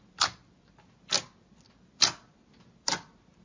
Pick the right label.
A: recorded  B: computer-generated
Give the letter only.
A